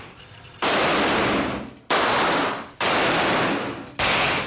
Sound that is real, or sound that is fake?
real